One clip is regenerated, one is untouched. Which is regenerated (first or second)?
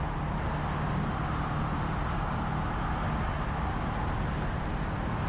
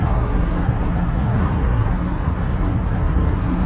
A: second